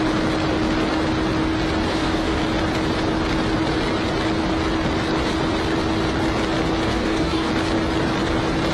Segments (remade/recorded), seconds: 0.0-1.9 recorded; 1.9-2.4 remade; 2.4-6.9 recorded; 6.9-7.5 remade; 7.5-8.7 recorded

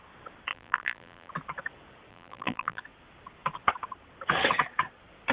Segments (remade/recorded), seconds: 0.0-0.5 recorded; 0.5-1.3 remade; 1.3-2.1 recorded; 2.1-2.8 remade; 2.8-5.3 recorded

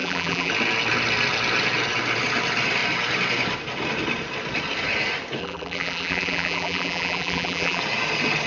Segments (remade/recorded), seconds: 0.0-0.5 remade; 0.5-5.4 recorded; 5.4-7.8 remade; 7.8-8.5 recorded

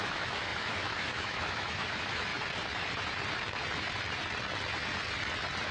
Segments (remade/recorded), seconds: 0.0-2.3 remade; 2.3-5.7 recorded